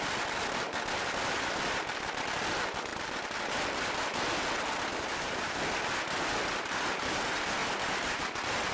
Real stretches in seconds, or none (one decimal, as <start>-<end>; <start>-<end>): 0.0-2.9; 3.5-4.9; 5.6-8.7